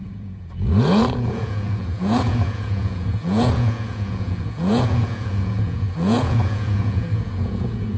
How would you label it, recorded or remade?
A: remade